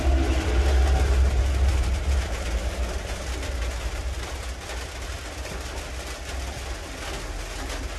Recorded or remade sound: recorded